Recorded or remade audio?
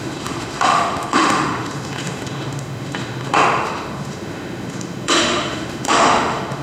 remade